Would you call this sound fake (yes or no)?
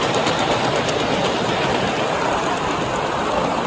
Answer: no